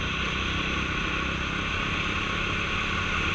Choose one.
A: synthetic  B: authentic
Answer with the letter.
B